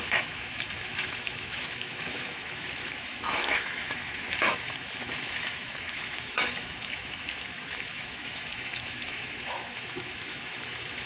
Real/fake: fake